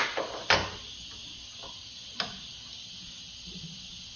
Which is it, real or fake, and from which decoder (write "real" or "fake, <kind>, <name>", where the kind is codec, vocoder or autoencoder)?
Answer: real